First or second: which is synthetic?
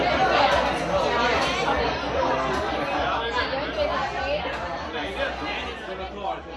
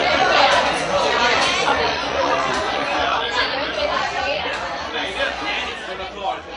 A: second